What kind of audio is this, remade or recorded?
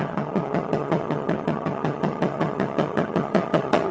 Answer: remade